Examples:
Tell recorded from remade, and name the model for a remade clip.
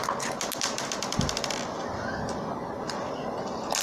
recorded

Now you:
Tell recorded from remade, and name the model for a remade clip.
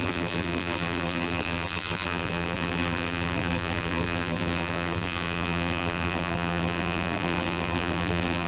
remade, vocoder, BigVGAN v2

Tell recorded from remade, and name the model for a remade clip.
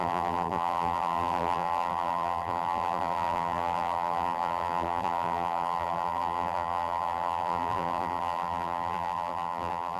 remade, vocoder, BigVGAN v2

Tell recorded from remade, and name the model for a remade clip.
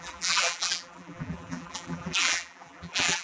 remade, vocoder, BigVGAN v2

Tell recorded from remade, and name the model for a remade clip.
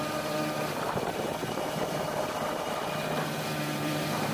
remade, vocoder, BigVGAN v2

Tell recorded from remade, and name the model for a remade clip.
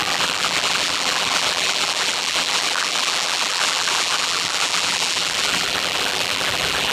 remade, vocoder, BigVGAN v2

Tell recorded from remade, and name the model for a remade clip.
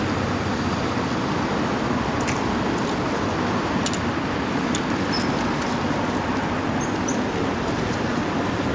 recorded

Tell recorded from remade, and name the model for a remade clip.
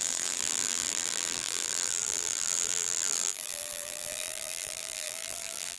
remade, vocoder, BigVGAN v2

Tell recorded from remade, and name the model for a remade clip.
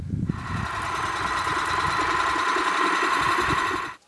recorded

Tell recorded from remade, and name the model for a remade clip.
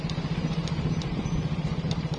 remade, vocoder, BigVGAN v2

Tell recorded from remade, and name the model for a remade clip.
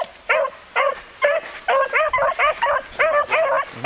recorded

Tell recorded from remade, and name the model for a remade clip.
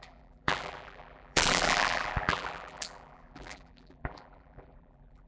remade, vocoder, BigVGAN v2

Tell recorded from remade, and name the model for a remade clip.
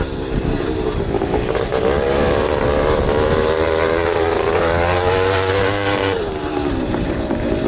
remade, vocoder, BigVGAN v2